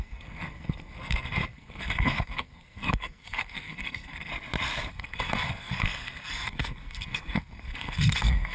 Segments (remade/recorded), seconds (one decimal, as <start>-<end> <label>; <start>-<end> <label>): 0.0-4.3 remade; 4.3-4.9 recorded; 4.9-8.5 remade

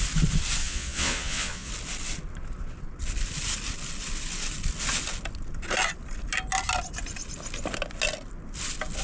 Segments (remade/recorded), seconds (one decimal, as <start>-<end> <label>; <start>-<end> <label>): 0.0-0.6 recorded; 0.6-1.7 remade; 1.7-9.0 recorded